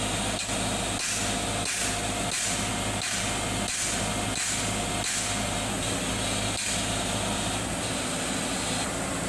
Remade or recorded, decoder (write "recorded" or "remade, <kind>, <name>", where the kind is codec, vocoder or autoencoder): recorded